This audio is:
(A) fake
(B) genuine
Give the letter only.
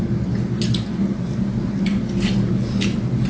B